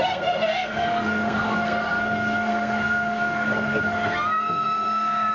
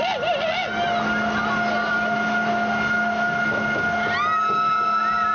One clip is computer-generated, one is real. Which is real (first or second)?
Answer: second